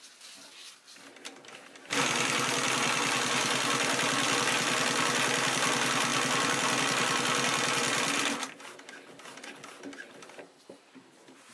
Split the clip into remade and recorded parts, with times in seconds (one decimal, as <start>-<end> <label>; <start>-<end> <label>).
0.0-11.5 recorded